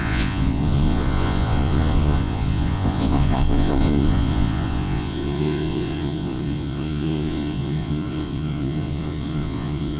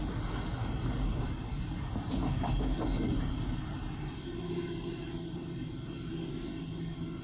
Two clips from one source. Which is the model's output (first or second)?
first